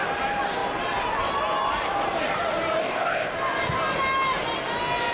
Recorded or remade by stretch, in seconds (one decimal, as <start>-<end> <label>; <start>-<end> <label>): 0.0-2.8 recorded; 2.8-3.3 remade; 3.3-5.1 recorded